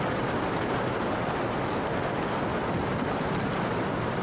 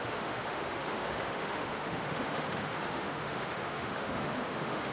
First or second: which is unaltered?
first